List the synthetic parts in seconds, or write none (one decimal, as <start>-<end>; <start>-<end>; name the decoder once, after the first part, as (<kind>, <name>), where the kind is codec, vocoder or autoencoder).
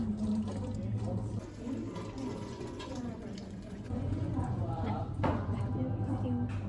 2.2-5.7 (vocoder, Vocos)